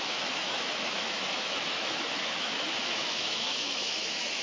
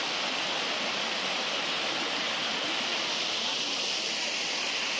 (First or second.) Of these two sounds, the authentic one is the second